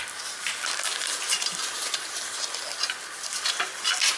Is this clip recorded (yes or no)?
yes